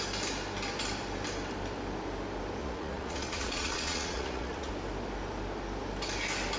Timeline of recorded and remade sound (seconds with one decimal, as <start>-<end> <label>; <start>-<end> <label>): 0.0-2.6 recorded; 2.6-4.7 remade; 4.7-6.6 recorded

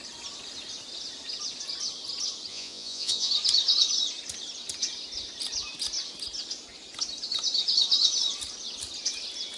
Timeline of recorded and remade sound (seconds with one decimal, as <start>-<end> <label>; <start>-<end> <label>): 0.0-2.5 recorded; 2.5-3.3 remade; 3.3-9.6 recorded

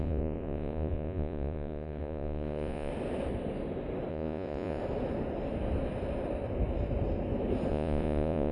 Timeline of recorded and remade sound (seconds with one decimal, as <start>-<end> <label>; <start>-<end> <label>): 0.0-2.9 remade; 2.9-4.1 recorded; 4.1-4.8 remade; 4.8-7.7 recorded; 7.7-8.5 remade

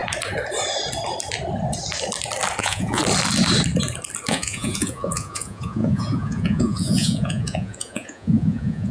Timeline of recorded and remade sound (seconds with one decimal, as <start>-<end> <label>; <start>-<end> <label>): 0.0-2.6 recorded; 2.6-3.0 remade; 3.0-4.3 recorded; 4.3-8.9 remade

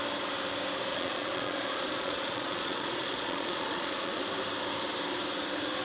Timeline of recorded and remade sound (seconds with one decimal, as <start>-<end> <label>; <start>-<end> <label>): 0.0-0.9 recorded; 0.9-4.2 remade; 4.2-5.8 recorded

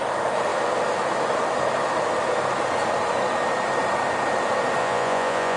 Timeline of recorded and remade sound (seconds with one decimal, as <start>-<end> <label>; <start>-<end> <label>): 0.0-4.8 recorded; 4.8-5.6 remade

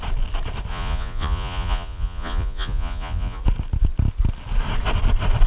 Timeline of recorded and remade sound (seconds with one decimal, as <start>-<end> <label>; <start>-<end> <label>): 0.0-0.7 recorded; 0.7-3.4 remade; 3.4-5.5 recorded

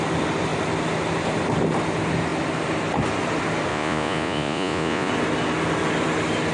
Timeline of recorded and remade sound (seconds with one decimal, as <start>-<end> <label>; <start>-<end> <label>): 0.0-3.7 recorded; 3.7-5.1 remade; 5.1-6.5 recorded